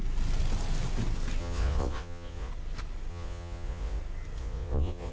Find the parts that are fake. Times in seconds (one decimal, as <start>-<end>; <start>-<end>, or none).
1.4-2.5; 3.1-4.0; 4.4-5.1